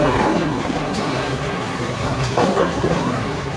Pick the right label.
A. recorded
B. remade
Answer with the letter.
B